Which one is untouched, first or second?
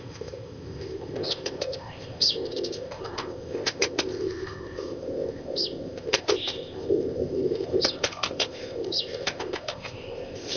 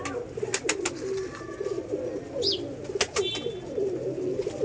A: second